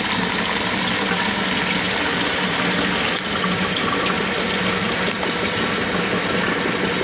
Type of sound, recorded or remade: recorded